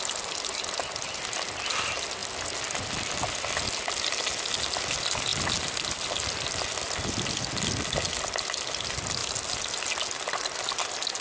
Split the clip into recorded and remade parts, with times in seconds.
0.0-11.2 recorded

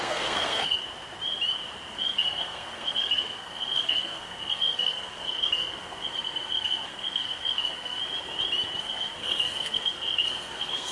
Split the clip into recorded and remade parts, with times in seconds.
0.0-0.8 remade; 0.8-1.9 recorded; 1.9-8.0 remade; 8.0-8.8 recorded; 8.8-10.9 remade

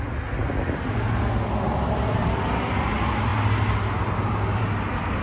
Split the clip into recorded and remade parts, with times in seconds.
0.0-5.2 recorded

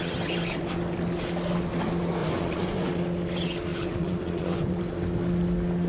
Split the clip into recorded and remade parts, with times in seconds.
0.0-2.2 recorded; 2.2-2.9 remade; 2.9-3.7 recorded; 3.7-4.8 remade; 4.8-5.9 recorded

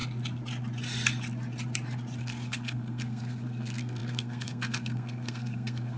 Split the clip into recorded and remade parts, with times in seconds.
0.0-2.2 recorded; 2.2-6.0 remade